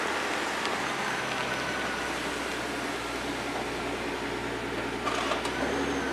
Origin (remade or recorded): recorded